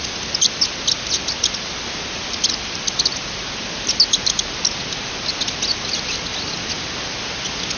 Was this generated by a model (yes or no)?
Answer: no